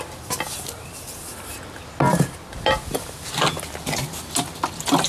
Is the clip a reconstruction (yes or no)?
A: no